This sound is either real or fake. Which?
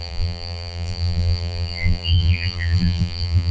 fake